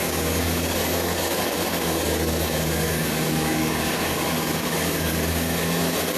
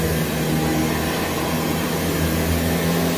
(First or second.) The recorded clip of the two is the second